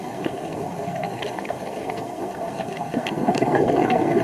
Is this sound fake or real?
fake